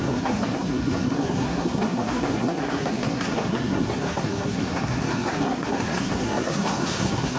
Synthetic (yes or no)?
yes